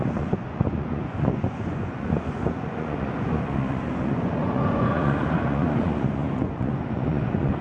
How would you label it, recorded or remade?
remade